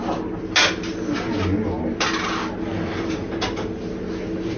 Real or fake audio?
real